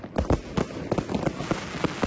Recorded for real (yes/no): yes